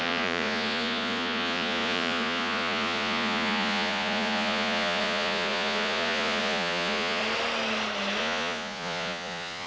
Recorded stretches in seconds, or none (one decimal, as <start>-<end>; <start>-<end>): 7.2-8.2